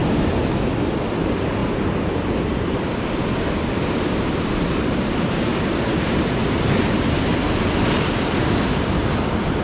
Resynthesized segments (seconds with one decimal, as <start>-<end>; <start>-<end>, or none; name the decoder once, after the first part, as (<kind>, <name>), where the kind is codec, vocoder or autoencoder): 0.9-1.6 (vocoder, BigVGAN v2); 2.3-9.6